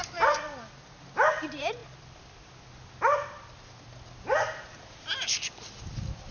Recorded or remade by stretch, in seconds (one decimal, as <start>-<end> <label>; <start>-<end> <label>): 0.0-6.3 recorded